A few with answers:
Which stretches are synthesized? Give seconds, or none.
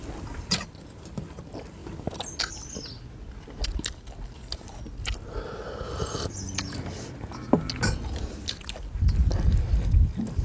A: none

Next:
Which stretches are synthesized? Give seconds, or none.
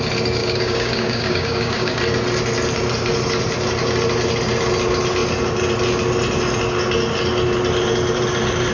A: 0.4-2.0 (codec, DAC)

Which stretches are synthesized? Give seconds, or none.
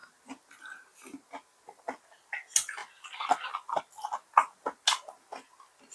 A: none